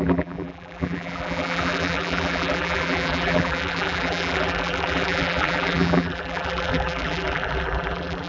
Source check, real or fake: fake